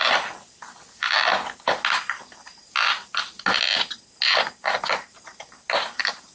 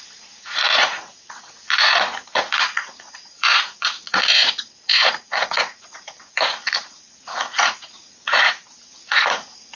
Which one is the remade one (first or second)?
second